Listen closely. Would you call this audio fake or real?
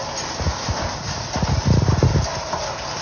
real